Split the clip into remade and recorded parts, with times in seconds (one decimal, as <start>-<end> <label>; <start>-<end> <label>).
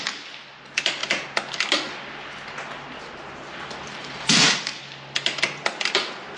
0.0-6.4 recorded